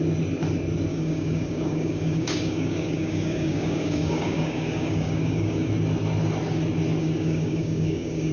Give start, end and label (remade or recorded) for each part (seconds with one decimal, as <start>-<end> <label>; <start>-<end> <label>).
0.0-0.9 recorded; 0.9-5.7 remade; 5.7-7.0 recorded; 7.0-8.3 remade